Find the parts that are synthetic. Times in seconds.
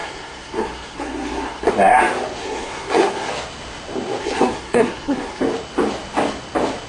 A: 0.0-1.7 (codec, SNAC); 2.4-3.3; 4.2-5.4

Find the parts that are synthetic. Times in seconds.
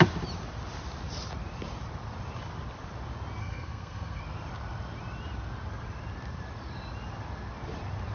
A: 3.4-4.2 (codec, SNAC)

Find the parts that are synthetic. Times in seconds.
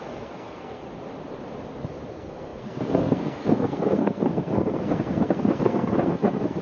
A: 0.0-0.8 (codec, SNAC); 2.1-6.6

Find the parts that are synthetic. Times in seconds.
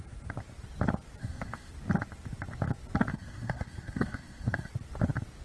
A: 1.2-1.7 (codec, SNAC); 3.1-4.7